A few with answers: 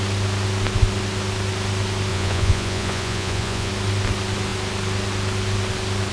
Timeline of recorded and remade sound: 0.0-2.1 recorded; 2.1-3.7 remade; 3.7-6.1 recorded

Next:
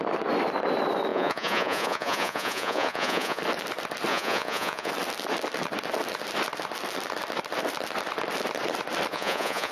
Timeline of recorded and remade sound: 0.0-1.1 recorded; 1.1-3.4 remade; 3.4-4.1 recorded; 4.1-4.9 remade; 4.9-9.1 recorded; 9.1-9.7 remade

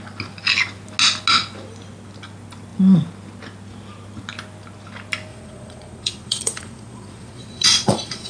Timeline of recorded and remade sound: 0.0-5.3 recorded; 5.3-8.3 remade

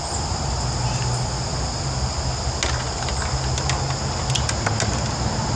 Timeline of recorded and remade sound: 0.0-5.6 recorded

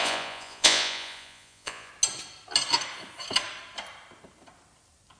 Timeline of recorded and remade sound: 0.0-1.9 remade; 1.9-5.2 recorded